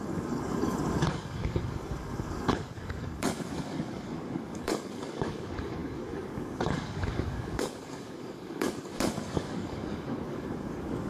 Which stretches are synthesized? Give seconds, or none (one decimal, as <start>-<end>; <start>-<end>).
0.0-11.1